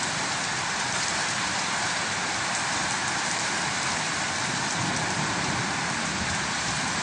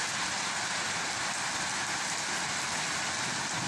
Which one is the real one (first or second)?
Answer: second